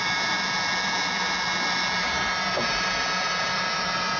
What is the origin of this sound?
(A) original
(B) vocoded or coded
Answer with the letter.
B